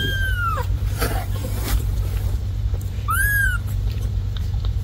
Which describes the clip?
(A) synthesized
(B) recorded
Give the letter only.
A